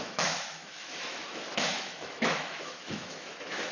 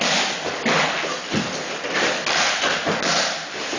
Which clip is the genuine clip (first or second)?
second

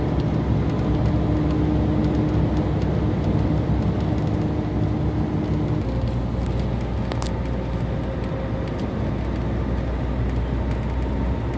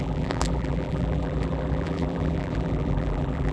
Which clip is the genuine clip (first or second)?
first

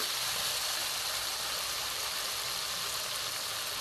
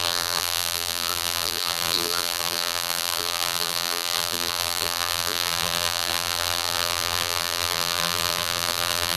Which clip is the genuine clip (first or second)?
first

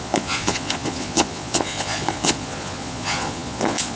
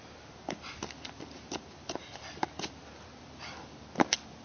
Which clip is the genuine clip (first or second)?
second